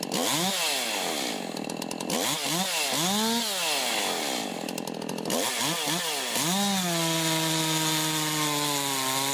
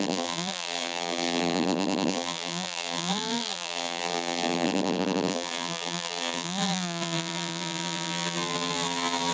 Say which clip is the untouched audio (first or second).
first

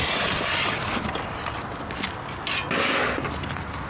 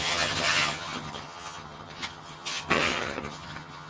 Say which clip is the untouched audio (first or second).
first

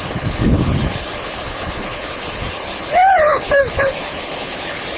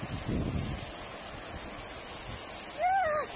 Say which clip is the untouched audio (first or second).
second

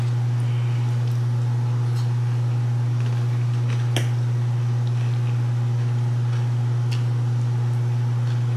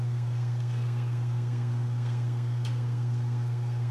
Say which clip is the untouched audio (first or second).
first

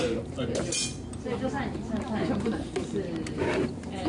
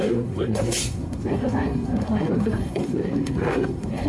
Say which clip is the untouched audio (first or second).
first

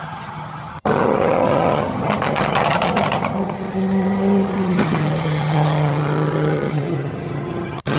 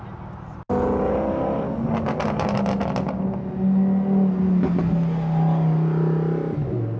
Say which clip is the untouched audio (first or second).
second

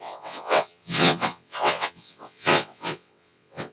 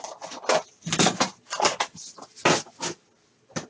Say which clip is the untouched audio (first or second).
second